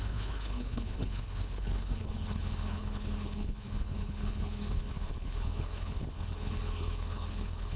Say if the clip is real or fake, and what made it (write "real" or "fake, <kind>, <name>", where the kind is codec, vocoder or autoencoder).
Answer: fake, codec, HILCodec